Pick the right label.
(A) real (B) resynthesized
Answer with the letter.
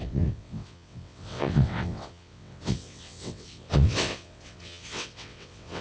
B